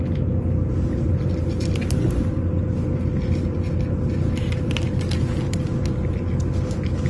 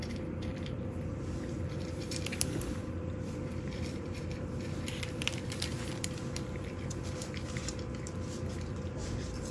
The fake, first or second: second